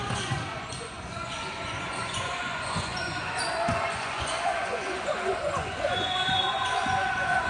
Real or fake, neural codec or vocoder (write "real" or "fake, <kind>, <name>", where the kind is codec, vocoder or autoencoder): fake, vocoder, Vocos